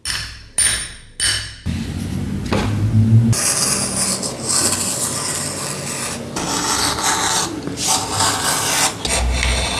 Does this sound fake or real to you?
real